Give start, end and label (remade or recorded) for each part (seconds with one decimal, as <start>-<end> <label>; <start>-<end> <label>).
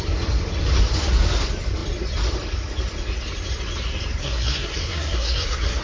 0.0-4.2 recorded; 4.2-5.8 remade